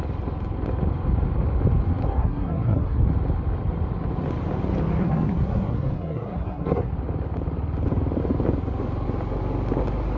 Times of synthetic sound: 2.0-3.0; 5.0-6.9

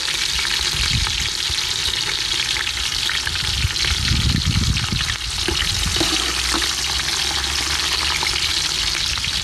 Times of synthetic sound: none

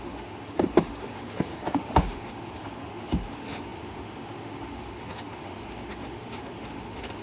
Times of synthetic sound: 0.0-7.2

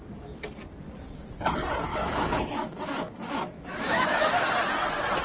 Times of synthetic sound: 1.9-4.5

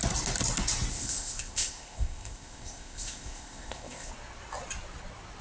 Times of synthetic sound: 0.9-4.1

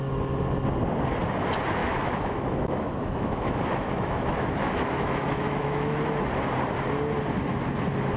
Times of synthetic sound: 1.8-6.3

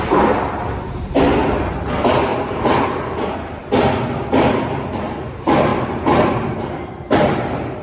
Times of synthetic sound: 0.0-3.6; 4.3-7.8